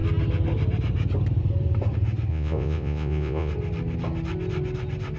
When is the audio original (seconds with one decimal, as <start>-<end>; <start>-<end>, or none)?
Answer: 0.0-2.3; 3.5-5.2